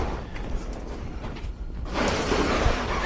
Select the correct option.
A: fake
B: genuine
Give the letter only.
B